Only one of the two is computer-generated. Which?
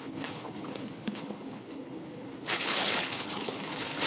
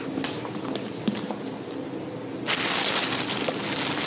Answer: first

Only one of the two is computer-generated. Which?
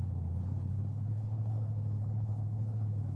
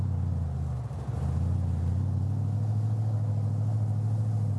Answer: first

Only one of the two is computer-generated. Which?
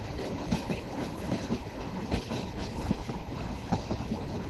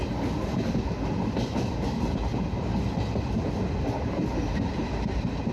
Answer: first